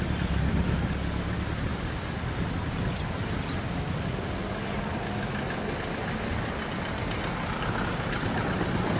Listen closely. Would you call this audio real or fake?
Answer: real